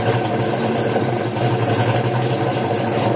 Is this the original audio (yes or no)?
yes